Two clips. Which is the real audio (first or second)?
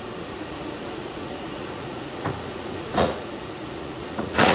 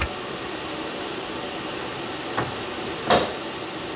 second